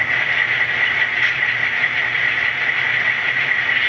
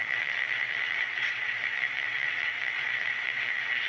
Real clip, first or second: first